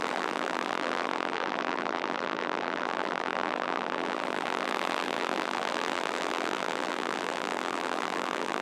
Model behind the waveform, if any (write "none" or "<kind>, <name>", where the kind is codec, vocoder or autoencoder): vocoder, BigVGAN v2